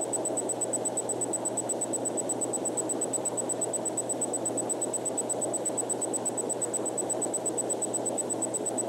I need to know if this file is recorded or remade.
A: recorded